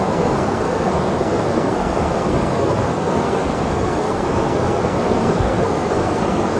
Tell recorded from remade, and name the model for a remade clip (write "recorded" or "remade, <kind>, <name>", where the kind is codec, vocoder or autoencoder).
remade, codec, SNAC